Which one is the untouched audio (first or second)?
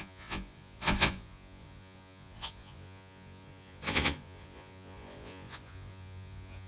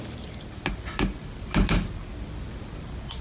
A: second